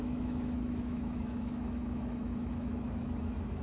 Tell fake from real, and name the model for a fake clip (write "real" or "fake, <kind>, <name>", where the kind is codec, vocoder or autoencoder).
fake, autoencoder, DAC-VAE